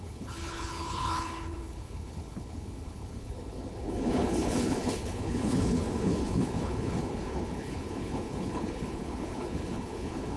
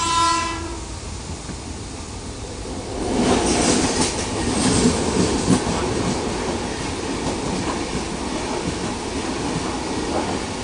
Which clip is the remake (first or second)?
first